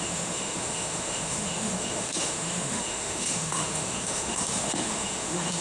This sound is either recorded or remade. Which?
remade